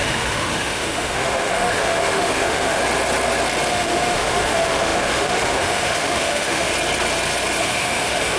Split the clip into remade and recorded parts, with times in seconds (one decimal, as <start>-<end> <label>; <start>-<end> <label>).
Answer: 0.0-2.8 remade; 2.8-3.7 recorded; 3.7-6.7 remade; 6.7-7.6 recorded; 7.6-8.4 remade